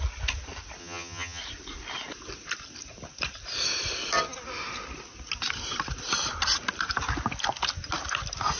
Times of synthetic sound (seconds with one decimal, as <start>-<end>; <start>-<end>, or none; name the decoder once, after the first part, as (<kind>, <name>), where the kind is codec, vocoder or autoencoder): 0.8-1.4 (vocoder, HiFi-GAN)